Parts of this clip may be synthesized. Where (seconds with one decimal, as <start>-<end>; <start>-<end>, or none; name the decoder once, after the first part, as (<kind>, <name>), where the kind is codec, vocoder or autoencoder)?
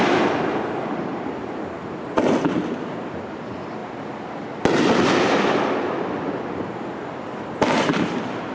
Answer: none